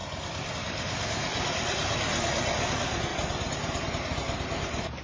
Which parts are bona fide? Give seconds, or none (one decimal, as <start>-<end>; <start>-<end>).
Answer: 1.3-2.4